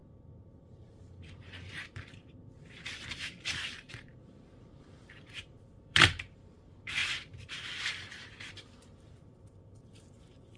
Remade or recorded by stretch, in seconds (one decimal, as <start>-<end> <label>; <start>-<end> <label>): 0.0-10.6 remade